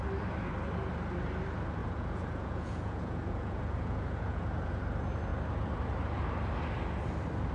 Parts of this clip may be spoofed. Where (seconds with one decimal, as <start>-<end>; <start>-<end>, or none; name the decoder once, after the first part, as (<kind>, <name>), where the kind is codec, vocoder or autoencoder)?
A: 1.8-4.8 (vocoder, Vocos)